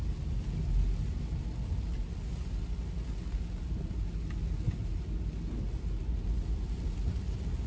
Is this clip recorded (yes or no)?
yes